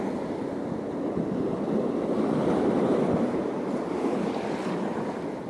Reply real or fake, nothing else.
real